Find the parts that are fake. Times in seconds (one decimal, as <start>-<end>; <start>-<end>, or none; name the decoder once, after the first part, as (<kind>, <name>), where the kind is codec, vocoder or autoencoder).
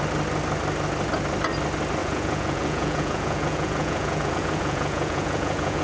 2.0-5.8 (vocoder, Vocos)